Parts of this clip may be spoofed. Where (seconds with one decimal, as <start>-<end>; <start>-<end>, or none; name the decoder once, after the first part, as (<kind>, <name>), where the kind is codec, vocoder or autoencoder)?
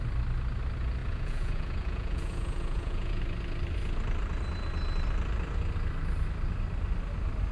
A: 1.0-3.2 (vocoder, Vocos)